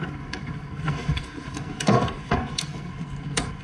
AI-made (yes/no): yes